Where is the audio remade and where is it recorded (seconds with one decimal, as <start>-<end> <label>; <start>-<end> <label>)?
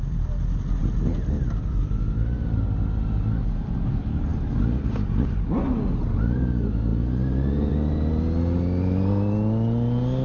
0.0-10.2 recorded